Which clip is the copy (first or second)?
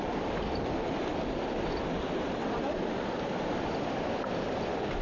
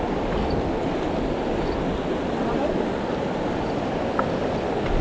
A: first